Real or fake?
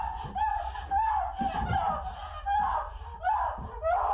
real